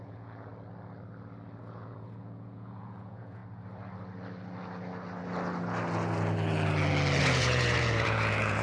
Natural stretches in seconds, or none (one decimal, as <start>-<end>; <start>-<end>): 0.5-1.6; 3.4-7.2